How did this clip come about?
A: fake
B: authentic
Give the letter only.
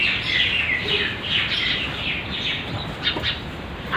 B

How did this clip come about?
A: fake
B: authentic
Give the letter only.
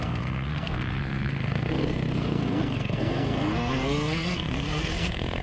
A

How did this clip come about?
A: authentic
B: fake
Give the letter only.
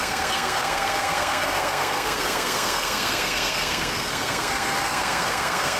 B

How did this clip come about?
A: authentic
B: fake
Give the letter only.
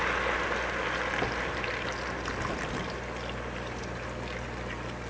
A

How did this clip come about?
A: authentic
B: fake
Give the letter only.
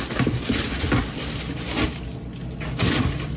A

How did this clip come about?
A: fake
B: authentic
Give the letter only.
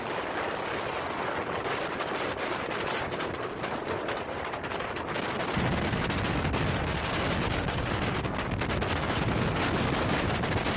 B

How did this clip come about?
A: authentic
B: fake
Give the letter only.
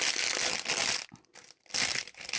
A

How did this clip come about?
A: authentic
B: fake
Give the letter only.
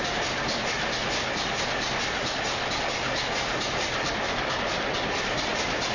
A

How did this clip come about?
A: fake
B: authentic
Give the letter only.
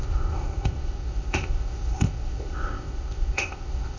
A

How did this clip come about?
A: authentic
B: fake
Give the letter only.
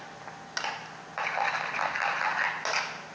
A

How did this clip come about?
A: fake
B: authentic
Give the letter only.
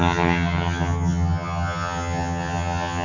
A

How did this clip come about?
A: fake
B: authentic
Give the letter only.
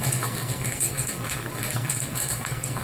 A